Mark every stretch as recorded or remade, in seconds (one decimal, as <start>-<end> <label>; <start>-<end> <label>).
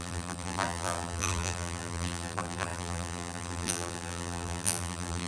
0.0-5.3 remade